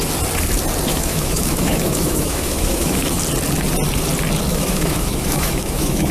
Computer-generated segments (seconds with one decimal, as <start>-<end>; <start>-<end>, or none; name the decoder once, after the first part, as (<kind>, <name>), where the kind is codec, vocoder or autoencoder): 0.9-3.2 (autoencoder, DAC-VAE); 4.5-6.1